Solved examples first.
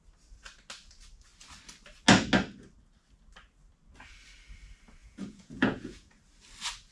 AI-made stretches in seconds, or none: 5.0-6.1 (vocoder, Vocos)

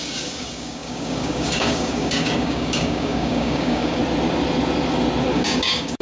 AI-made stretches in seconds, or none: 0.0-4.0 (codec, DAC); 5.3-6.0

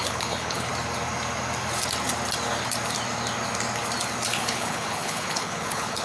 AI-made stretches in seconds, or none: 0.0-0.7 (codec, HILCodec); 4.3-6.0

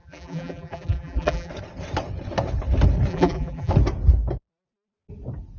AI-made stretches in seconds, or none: 0.0-1.5 (vocoder, BigVGAN v2); 3.1-3.7

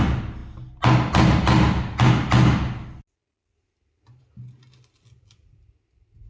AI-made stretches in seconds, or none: none

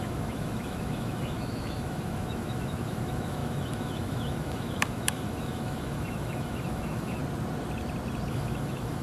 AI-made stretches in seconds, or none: 0.0-7.2 (autoencoder, DAC-VAE); 8.3-9.0

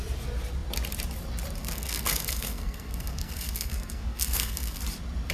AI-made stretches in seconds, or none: 1.6-4.8 (codec, SNAC)

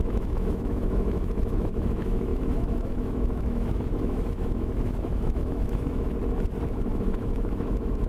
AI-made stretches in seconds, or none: 0.0-6.2 (autoencoder, DAC-VAE); 6.7-8.1